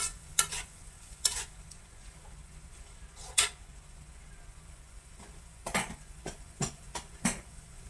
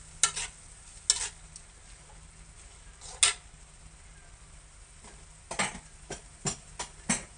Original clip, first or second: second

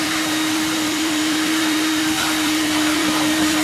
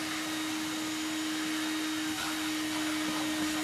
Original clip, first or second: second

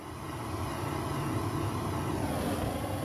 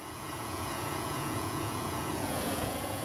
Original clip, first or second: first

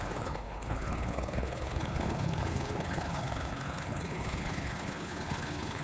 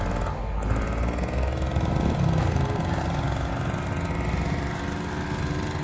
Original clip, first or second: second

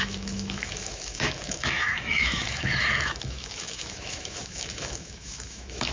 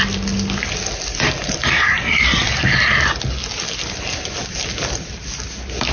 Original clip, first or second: second